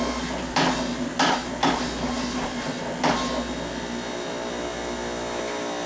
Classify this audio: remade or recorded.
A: recorded